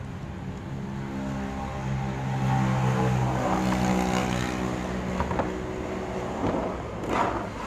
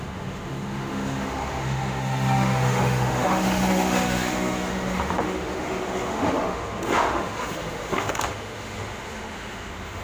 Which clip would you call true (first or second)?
first